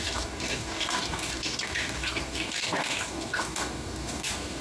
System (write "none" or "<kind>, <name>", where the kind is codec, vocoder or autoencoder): codec, DAC